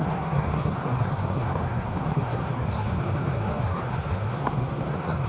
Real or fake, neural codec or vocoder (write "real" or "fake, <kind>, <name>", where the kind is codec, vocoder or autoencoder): fake, codec, SNAC